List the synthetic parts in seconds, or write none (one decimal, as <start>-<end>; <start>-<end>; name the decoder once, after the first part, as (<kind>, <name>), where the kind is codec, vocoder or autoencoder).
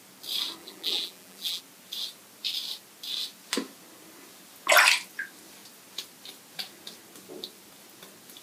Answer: 0.6-1.6 (vocoder, BigVGAN v2)